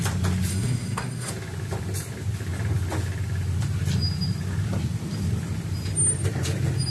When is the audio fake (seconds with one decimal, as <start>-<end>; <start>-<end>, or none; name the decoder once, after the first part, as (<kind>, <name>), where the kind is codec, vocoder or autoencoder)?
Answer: 0.5-1.3 (codec, SNAC)